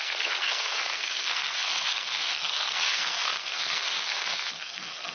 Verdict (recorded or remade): remade